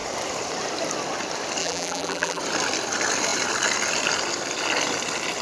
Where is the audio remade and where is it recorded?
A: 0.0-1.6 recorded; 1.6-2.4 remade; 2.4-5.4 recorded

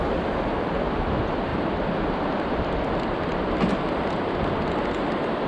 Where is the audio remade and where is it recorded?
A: 0.0-1.5 recorded; 1.5-4.8 remade; 4.8-5.5 recorded

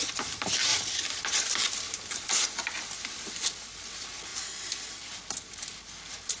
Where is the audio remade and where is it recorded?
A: 0.0-0.7 recorded; 0.7-3.4 remade; 3.4-4.3 recorded; 4.3-6.4 remade

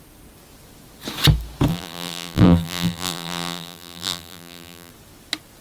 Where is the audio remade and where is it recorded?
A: 0.0-1.7 recorded; 1.7-4.9 remade; 4.9-5.6 recorded

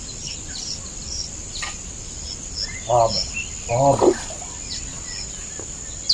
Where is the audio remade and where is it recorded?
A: 0.0-6.1 recorded